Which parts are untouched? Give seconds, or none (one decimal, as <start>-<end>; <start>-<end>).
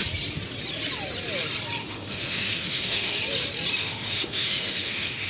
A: 0.0-1.8; 3.2-3.8